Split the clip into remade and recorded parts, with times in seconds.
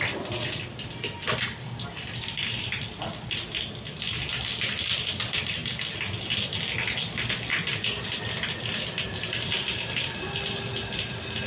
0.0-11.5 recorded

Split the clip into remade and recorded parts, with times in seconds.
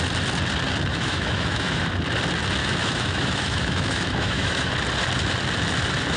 0.0-0.9 recorded; 0.9-1.8 remade; 1.8-2.6 recorded; 2.6-4.7 remade; 4.7-6.2 recorded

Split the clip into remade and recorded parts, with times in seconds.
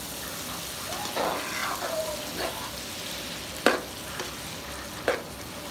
0.0-5.7 recorded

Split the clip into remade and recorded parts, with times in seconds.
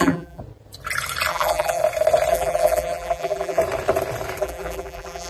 0.0-0.4 remade; 0.4-1.3 recorded; 1.3-1.8 remade; 1.8-2.3 recorded; 2.3-3.6 remade; 3.6-4.4 recorded; 4.4-5.3 remade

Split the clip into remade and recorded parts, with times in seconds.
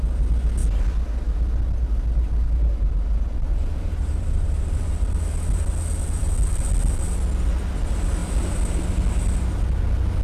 0.0-3.5 recorded; 3.5-4.8 remade; 4.8-10.2 recorded